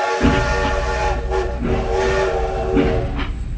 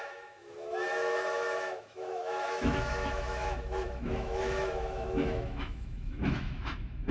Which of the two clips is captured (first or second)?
first